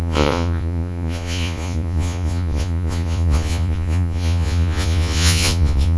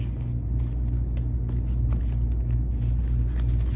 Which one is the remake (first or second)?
first